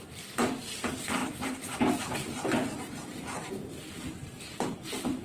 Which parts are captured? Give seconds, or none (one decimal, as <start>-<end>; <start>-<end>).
none